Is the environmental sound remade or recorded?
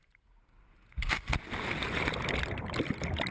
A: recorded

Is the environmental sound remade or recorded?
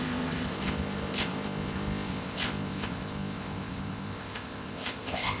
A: remade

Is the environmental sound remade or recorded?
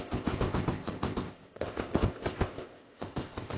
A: remade